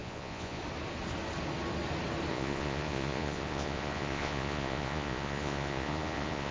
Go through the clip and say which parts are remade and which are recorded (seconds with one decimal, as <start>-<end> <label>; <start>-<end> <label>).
0.0-0.6 remade; 0.6-2.3 recorded; 2.3-6.5 remade